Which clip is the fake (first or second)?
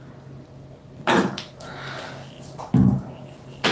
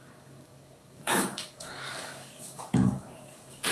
second